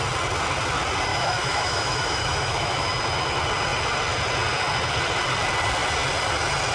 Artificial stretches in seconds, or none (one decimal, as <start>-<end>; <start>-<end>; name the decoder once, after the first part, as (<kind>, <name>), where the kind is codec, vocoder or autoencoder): 1.1-2.9 (autoencoder, DAC-VAE)